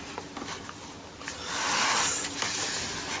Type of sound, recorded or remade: recorded